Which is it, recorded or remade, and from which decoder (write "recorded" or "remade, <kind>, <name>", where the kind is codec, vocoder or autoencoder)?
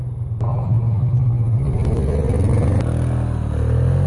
recorded